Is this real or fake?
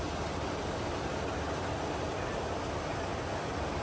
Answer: real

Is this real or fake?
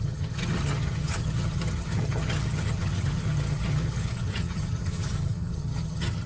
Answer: fake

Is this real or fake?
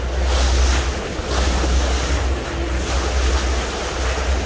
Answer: real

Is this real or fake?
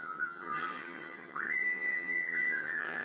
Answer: fake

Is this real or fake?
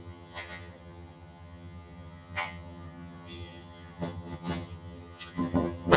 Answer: fake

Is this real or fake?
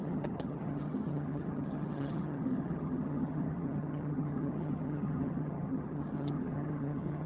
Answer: fake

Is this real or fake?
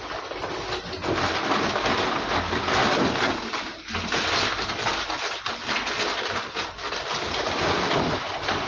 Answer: real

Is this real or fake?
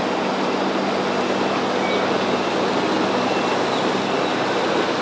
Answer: real